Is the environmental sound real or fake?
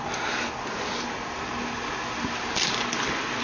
real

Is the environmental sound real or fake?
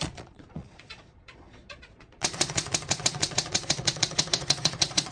fake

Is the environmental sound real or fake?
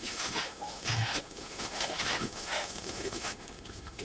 fake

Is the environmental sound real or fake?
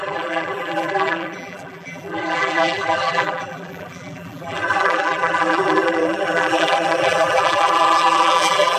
fake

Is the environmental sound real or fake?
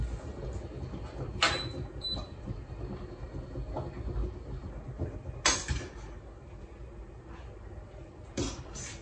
real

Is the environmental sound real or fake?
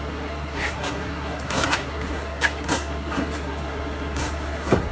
fake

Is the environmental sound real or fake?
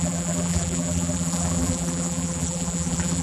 fake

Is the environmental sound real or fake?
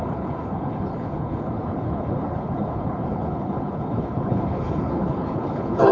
fake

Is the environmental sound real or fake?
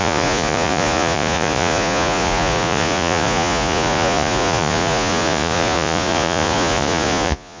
fake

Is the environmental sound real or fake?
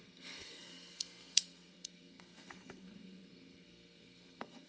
fake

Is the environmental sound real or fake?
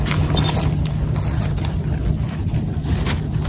real